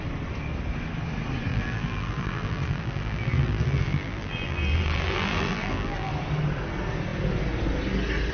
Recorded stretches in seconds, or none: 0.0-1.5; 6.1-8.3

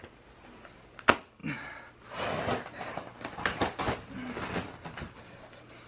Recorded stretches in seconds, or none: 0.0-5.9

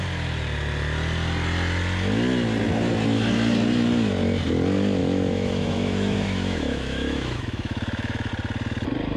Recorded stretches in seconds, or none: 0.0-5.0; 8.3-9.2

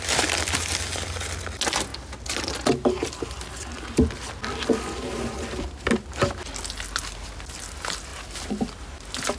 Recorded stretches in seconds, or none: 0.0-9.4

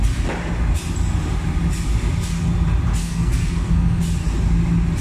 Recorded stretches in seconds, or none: 0.0-3.0; 4.0-5.0

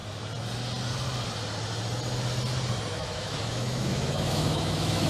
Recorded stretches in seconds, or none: 0.0-2.9

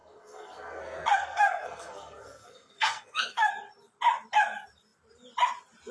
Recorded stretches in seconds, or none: 3.5-5.9

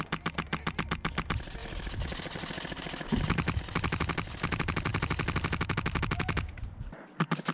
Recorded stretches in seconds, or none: 0.0-7.5